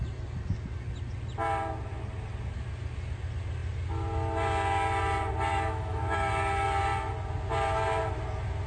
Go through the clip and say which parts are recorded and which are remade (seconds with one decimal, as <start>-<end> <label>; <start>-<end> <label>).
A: 0.0-5.5 recorded; 5.5-6.3 remade; 6.3-8.7 recorded